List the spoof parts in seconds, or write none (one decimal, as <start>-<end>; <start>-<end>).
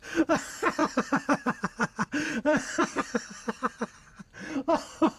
0.8-3.9